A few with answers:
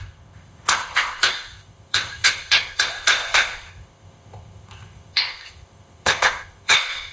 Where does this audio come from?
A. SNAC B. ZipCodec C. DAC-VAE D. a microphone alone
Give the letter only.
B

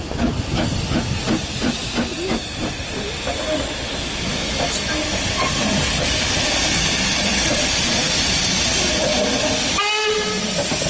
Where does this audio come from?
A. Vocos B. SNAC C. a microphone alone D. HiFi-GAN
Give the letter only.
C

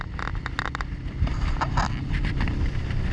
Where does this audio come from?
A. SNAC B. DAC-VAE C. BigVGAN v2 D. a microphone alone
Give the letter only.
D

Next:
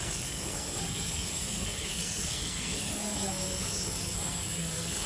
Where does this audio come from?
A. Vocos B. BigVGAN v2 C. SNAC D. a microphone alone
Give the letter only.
C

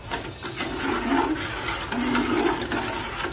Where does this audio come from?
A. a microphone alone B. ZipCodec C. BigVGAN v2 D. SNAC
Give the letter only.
A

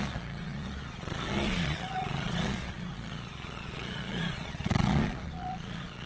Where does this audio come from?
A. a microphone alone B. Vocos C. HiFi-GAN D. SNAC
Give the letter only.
B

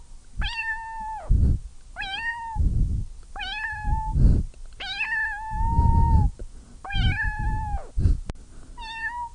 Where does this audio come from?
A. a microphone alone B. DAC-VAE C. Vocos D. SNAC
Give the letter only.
A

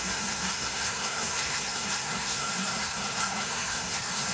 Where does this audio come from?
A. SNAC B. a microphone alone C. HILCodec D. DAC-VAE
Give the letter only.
A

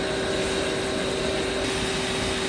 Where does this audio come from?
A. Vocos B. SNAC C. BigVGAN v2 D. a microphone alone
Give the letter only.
D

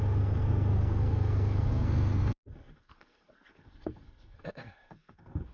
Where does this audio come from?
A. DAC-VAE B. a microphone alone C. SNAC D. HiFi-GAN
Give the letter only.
C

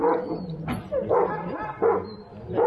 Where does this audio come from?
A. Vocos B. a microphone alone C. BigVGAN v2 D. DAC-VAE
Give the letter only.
B